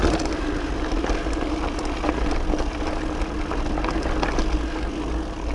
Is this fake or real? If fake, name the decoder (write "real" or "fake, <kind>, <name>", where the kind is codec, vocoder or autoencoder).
real